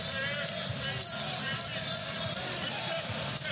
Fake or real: real